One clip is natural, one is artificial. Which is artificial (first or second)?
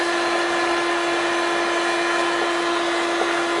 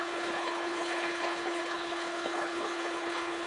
second